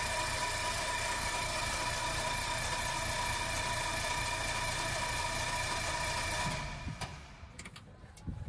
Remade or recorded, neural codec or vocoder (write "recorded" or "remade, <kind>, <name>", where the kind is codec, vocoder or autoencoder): recorded